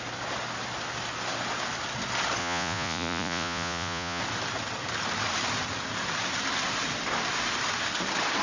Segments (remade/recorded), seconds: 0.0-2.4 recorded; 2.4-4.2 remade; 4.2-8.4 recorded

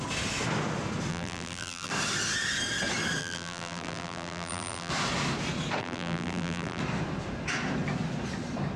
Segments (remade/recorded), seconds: 0.0-1.1 recorded; 1.1-1.9 remade; 1.9-3.2 recorded; 3.2-4.9 remade; 4.9-5.8 recorded; 5.8-6.8 remade; 6.8-8.8 recorded

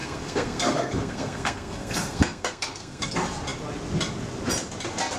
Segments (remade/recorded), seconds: 0.0-3.1 remade; 3.1-5.2 recorded

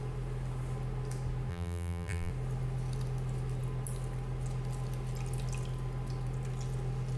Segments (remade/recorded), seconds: 0.0-1.5 recorded; 1.5-2.3 remade; 2.3-7.2 recorded

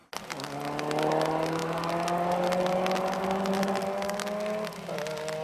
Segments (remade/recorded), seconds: 0.0-5.4 recorded

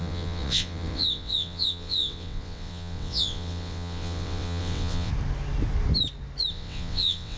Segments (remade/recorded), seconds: 0.0-5.1 remade; 5.1-6.5 recorded; 6.5-7.4 remade

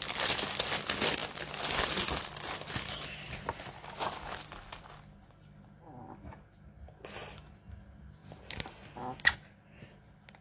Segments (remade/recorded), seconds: 0.0-10.4 recorded